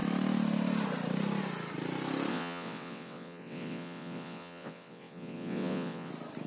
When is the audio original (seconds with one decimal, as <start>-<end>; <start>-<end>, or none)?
0.0-2.3; 6.1-6.5